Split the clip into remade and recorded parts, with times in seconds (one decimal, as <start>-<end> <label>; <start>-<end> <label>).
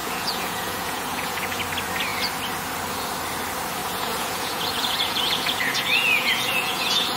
0.0-1.6 remade; 1.6-3.8 recorded; 3.8-7.2 remade